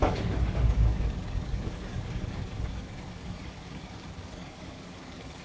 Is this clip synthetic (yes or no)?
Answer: yes